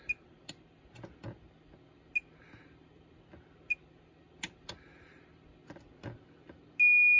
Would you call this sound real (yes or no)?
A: yes